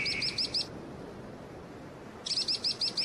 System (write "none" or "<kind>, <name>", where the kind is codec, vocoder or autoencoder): none